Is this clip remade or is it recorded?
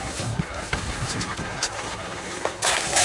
remade